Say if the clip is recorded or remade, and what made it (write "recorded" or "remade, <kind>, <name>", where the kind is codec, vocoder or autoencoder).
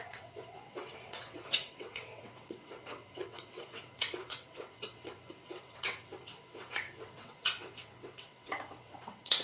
remade, vocoder, WaveNeXt